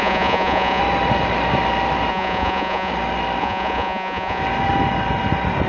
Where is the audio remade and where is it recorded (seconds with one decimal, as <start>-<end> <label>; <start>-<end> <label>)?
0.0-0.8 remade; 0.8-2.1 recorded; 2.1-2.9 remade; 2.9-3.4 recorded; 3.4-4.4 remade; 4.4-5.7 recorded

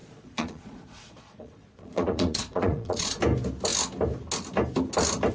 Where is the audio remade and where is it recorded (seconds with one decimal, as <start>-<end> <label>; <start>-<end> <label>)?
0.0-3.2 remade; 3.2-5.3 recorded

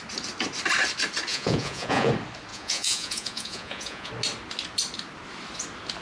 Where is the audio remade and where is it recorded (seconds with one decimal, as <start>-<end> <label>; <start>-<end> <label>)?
0.0-1.3 recorded; 1.3-2.1 remade; 2.1-2.5 recorded; 2.5-4.1 remade; 4.1-6.0 recorded

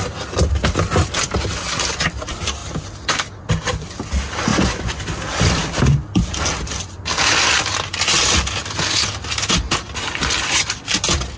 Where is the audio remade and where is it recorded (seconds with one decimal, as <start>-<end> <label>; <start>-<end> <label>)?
0.0-4.5 recorded; 4.5-5.0 remade; 5.0-11.4 recorded

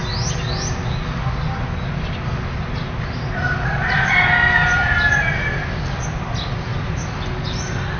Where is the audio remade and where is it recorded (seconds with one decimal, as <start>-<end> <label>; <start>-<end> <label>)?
0.0-8.0 recorded